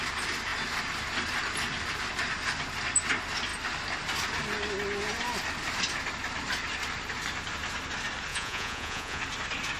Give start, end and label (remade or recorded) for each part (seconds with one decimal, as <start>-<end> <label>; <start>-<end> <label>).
0.0-8.3 recorded; 8.3-9.2 remade; 9.2-9.8 recorded

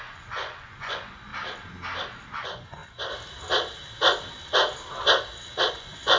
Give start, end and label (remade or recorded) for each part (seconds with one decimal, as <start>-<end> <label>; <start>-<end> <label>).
0.0-1.3 remade; 1.3-2.4 recorded; 2.4-2.8 remade; 2.8-5.7 recorded; 5.7-6.2 remade

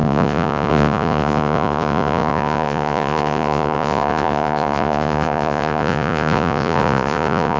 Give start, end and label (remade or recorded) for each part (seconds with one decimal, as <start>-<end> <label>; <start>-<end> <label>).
0.0-7.6 remade

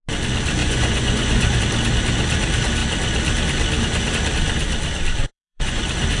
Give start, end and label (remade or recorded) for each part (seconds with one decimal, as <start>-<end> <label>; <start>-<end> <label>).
0.0-0.6 recorded; 0.6-1.6 remade; 1.6-5.2 recorded; 5.2-5.8 remade; 5.8-6.2 recorded

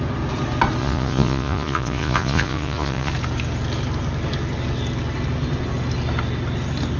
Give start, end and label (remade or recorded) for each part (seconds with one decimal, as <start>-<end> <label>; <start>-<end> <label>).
0.0-0.8 recorded; 0.8-3.1 remade; 3.1-7.0 recorded